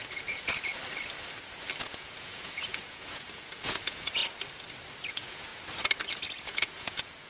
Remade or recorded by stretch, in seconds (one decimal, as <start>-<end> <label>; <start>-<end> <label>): 0.0-0.7 remade; 0.7-1.8 recorded; 1.8-4.2 remade; 4.2-5.1 recorded; 5.1-5.5 remade; 5.5-6.4 recorded; 6.4-7.3 remade